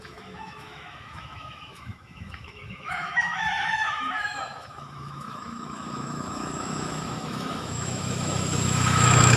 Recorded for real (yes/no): no